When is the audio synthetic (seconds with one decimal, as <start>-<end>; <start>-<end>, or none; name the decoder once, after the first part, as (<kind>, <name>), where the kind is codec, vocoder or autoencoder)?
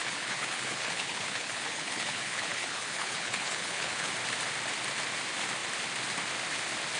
0.0-4.1 (codec, HILCodec)